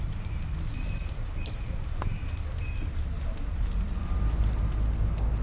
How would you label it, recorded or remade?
recorded